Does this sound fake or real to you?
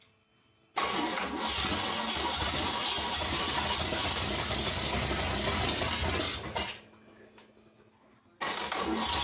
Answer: real